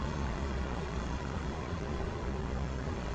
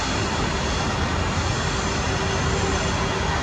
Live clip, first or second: second